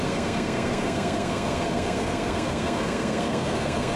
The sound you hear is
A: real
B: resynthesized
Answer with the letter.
B